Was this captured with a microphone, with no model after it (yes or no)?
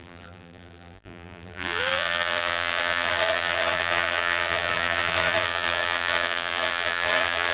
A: no